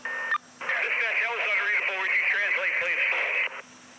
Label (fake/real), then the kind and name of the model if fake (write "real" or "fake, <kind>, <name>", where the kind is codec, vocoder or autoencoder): real